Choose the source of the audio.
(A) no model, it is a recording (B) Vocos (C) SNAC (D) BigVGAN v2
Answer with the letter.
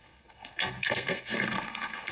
C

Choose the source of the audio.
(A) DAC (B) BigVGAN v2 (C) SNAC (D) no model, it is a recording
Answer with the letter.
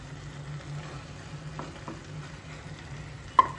D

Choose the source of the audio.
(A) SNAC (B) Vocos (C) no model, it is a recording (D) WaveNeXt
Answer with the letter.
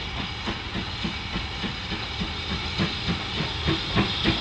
C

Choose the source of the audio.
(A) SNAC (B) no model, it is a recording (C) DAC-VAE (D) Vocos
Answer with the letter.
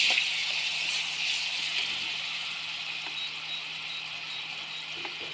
B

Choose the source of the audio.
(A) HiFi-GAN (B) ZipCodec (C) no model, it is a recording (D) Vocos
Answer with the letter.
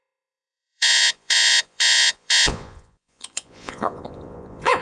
D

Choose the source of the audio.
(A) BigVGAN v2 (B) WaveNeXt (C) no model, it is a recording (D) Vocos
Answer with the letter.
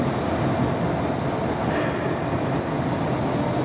C